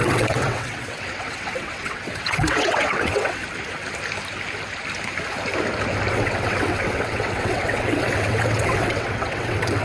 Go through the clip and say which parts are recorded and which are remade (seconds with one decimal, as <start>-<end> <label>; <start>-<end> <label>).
0.0-3.4 remade; 3.4-6.1 recorded; 6.1-9.8 remade